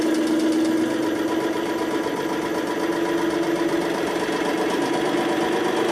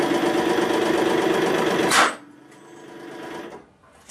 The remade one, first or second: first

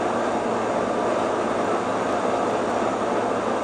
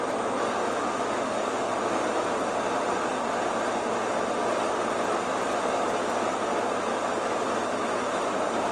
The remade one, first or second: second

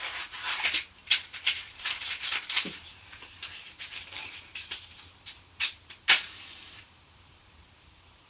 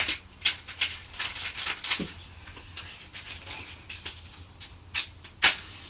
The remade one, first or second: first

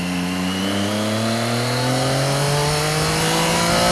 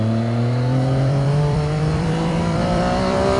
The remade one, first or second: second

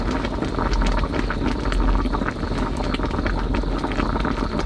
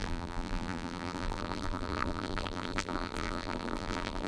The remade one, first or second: second